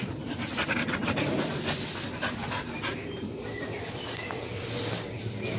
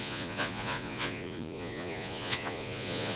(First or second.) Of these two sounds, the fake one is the second